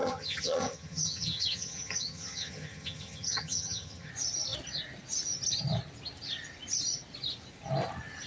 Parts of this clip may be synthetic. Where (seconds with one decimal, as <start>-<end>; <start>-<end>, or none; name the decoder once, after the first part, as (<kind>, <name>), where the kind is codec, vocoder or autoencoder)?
0.0-4.1 (vocoder, HiFi-GAN)